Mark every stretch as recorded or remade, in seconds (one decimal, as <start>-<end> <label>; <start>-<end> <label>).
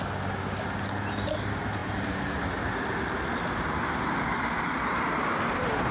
0.0-5.9 recorded